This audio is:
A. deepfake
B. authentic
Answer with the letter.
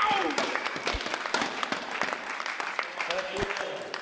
A